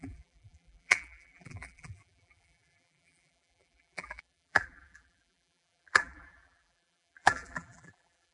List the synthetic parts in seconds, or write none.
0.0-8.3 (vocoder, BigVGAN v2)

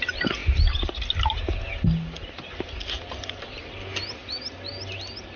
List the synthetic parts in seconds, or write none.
0.4-1.0 (vocoder, BigVGAN v2); 2.2-2.8

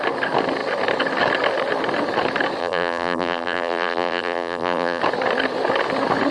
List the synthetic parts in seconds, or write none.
2.6-5.0 (vocoder, BigVGAN v2)

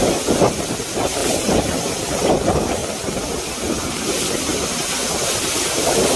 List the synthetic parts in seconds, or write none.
1.2-2.3 (vocoder, BigVGAN v2)

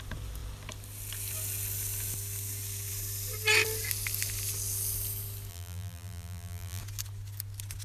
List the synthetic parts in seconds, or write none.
5.5-6.8 (vocoder, BigVGAN v2)